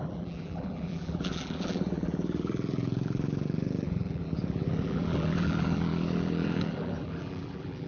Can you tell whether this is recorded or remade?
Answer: remade